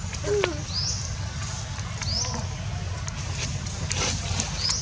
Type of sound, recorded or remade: recorded